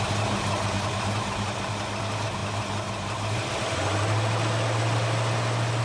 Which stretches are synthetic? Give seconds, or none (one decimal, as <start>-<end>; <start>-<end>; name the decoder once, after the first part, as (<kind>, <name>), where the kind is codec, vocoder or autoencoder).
none